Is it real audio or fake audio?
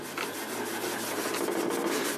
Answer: real